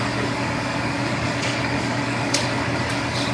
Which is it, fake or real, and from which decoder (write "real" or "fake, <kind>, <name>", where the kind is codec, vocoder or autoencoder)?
fake, codec, DAC